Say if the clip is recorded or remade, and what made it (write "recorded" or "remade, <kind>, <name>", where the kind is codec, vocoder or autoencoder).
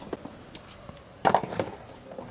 recorded